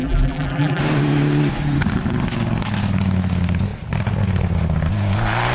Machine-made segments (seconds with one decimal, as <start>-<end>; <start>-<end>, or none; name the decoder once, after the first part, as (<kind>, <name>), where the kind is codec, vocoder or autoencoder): 0.0-0.8 (vocoder, BigVGAN v2)